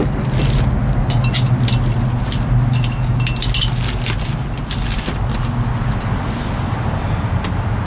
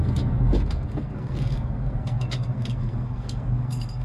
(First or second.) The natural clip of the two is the first